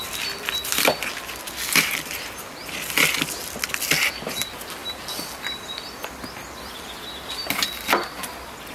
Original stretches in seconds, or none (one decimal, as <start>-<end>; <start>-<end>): 0.0-8.7